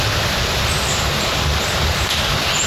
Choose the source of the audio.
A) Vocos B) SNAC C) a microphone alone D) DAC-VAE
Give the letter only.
C